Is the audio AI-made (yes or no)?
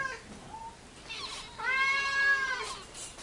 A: no